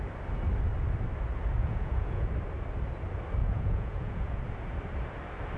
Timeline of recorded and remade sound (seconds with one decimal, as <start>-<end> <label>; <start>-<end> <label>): 0.0-1.6 recorded; 1.6-2.3 remade; 2.3-3.4 recorded; 3.4-4.4 remade; 4.4-5.6 recorded